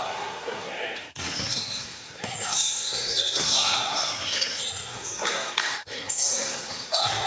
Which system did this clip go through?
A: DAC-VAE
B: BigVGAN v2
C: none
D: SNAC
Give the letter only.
D